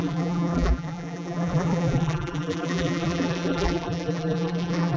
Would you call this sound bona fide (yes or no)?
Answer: no